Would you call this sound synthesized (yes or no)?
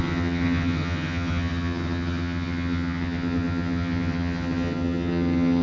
yes